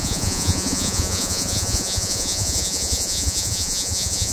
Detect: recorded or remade remade